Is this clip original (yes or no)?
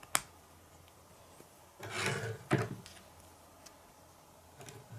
yes